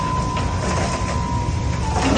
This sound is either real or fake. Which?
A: real